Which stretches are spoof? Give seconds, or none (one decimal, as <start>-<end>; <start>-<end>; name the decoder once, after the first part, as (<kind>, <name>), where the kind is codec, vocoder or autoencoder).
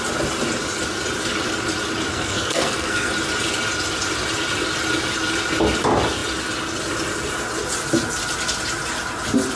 2.1-3.1 (codec, SNAC)